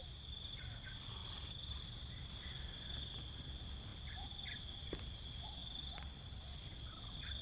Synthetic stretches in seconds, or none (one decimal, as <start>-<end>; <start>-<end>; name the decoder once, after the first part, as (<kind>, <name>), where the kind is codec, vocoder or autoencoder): 0.0-7.4 (vocoder, BigVGAN v2)